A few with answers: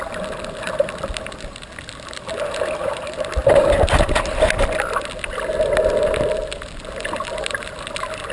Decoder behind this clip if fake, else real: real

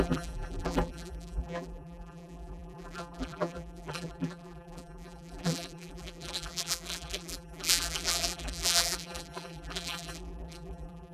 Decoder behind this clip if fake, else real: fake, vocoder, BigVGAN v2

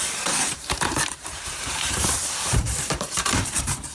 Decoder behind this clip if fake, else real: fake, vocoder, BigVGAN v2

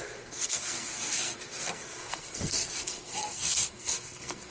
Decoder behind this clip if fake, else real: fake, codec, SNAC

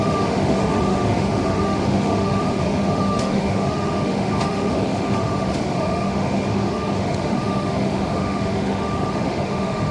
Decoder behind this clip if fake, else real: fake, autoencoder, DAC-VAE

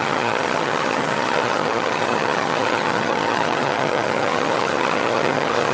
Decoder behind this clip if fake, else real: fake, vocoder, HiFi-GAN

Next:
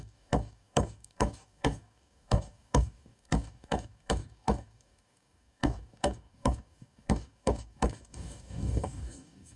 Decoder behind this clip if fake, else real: fake, codec, DAC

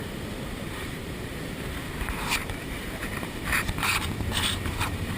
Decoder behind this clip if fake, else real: fake, vocoder, BigVGAN v2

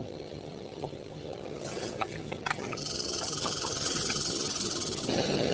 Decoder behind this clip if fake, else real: fake, vocoder, HiFi-GAN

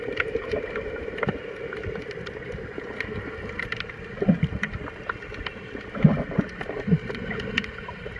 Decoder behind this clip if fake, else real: fake, vocoder, BigVGAN v2